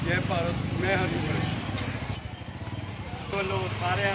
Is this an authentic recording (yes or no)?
yes